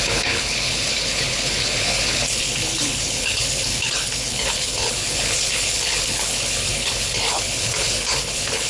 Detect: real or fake fake